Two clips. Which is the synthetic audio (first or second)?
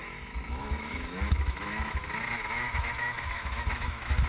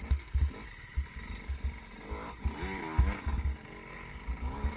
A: first